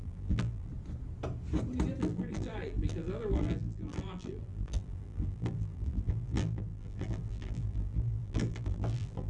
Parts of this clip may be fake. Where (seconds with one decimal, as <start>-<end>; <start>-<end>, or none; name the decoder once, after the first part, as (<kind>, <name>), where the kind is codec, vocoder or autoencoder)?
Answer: 0.0-0.7 (vocoder, BigVGAN v2); 2.0-9.3